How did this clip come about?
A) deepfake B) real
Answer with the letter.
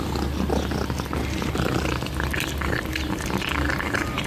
A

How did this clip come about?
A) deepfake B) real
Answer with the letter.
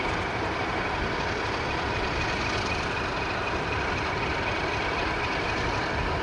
A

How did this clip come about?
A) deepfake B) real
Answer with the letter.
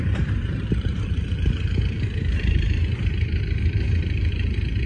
A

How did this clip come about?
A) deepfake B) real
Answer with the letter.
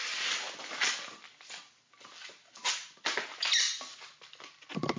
B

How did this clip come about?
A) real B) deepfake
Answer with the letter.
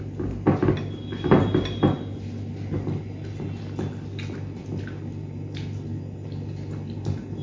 A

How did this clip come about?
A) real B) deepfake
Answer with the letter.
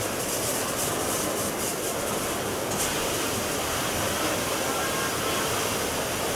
A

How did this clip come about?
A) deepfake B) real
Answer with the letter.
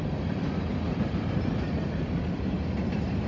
B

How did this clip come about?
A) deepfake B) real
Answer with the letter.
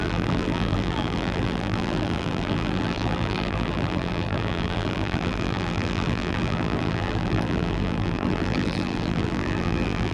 A